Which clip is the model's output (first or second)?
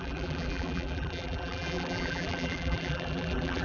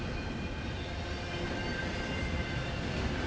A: first